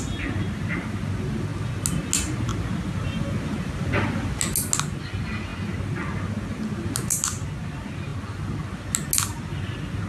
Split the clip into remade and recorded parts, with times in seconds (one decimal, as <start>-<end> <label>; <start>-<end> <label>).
0.0-10.1 recorded